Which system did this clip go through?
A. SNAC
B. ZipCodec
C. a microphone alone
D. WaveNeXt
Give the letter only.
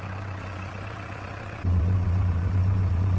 D